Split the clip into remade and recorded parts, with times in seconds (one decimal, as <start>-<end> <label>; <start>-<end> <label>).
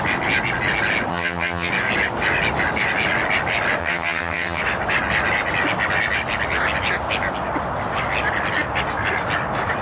0.0-1.1 recorded; 1.1-1.7 remade; 1.7-3.8 recorded; 3.8-4.6 remade; 4.6-9.8 recorded